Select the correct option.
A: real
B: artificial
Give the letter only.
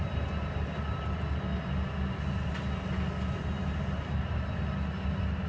A